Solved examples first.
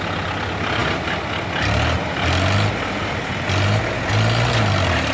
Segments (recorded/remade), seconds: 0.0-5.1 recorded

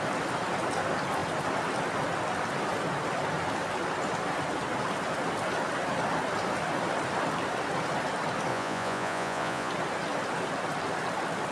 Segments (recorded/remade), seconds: 0.0-8.5 recorded; 8.5-9.7 remade; 9.7-11.5 recorded

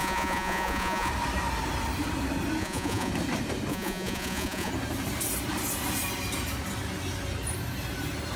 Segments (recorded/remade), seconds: 0.0-1.1 remade; 1.1-2.6 recorded; 2.6-3.1 remade; 3.1-3.7 recorded; 3.7-4.7 remade; 4.7-8.4 recorded

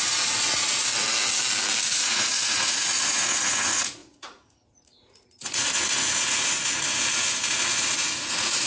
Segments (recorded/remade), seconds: 0.0-0.9 remade; 0.9-1.8 recorded; 1.8-8.7 remade

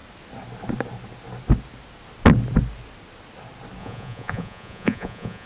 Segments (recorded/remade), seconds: 0.0-3.8 recorded; 3.8-5.5 remade

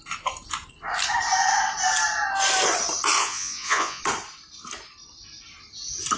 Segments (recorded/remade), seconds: 0.0-3.2 recorded; 3.2-4.0 remade; 4.0-6.2 recorded

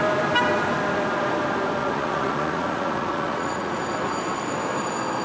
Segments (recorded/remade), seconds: 0.0-1.8 recorded; 1.8-3.8 remade; 3.8-5.2 recorded